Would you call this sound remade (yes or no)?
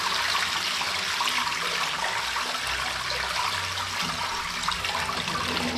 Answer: no